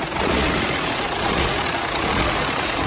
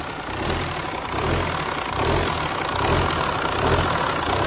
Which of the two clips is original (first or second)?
second